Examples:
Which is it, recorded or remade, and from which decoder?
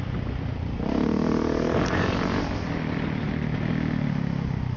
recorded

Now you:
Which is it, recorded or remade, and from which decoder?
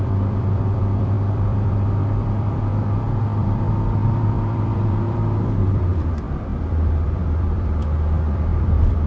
remade, vocoder, BigVGAN v2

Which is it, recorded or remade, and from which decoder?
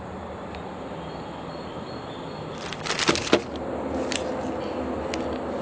recorded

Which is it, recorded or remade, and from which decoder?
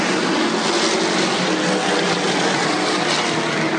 recorded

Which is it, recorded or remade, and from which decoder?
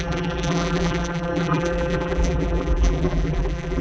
remade, vocoder, BigVGAN v2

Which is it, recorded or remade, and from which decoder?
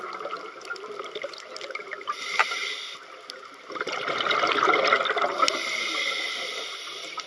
remade, vocoder, BigVGAN v2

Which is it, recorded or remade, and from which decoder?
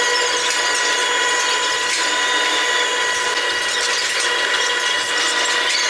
recorded